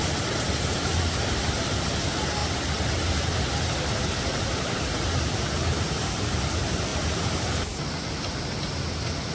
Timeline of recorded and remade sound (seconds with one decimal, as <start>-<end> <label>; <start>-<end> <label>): 0.0-9.3 recorded